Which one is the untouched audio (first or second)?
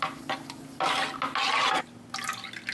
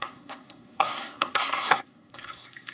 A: first